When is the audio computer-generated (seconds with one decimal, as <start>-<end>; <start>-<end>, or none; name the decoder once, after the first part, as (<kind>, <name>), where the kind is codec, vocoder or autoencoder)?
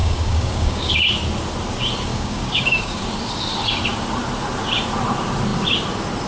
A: 0.0-0.9 (codec, DAC); 2.1-3.0